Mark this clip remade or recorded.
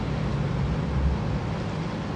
recorded